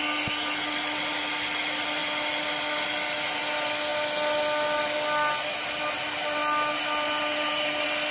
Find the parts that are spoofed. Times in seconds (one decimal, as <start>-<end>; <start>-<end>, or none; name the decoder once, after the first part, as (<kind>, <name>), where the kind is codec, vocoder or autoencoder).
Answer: none